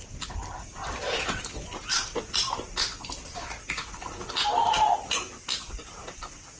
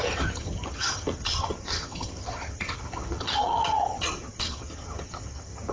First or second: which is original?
first